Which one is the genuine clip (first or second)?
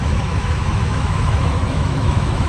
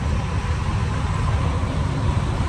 second